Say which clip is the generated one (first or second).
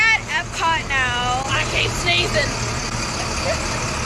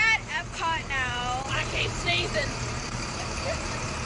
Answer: second